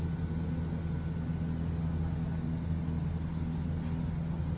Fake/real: real